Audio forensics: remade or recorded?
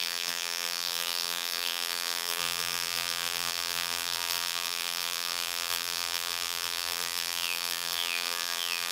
remade